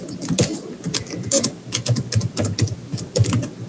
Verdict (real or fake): real